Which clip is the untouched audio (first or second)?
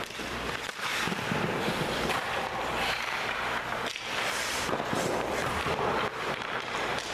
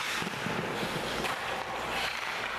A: second